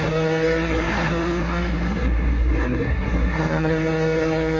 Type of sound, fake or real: fake